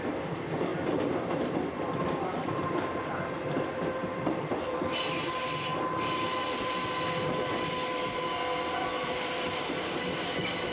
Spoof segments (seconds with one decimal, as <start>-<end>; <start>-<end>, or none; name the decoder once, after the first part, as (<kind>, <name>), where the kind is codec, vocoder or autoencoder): 0.7-2.5 (vocoder, BigVGAN v2); 4.0-4.7